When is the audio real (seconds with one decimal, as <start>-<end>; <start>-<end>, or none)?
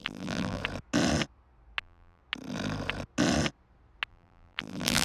0.6-1.8; 2.2-4.1